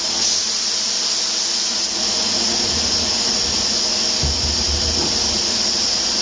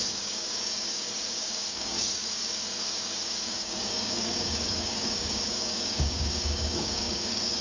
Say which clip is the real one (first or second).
first